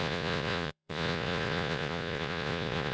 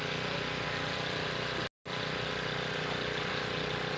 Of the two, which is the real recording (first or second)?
second